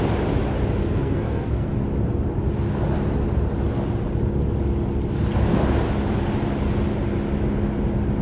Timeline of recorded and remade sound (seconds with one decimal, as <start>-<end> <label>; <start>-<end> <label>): 0.0-0.8 recorded; 0.8-1.7 remade; 1.7-8.2 recorded